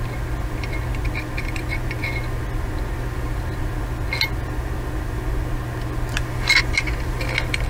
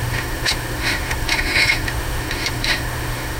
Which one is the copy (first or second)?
second